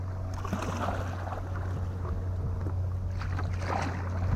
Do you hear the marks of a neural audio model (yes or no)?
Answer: no